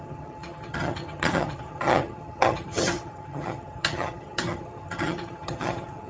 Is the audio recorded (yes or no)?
no